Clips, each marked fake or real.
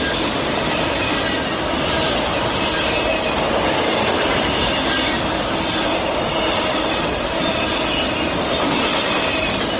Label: real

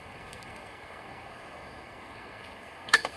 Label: fake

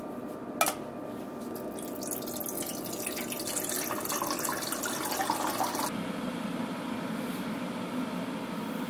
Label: real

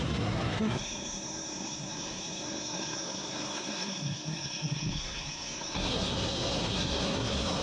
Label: fake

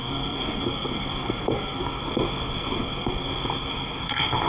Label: fake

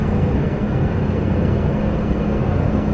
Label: fake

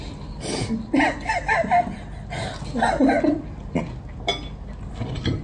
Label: real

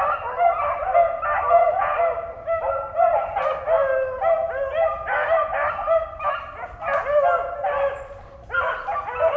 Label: real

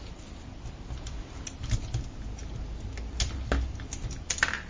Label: real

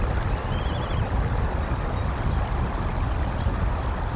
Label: real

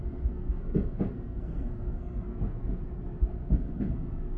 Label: fake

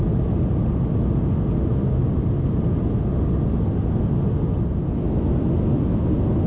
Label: real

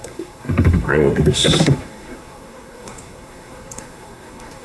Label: fake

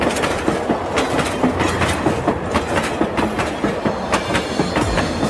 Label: real